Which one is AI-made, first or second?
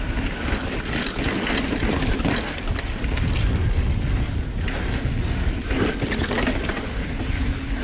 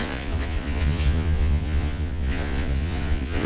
second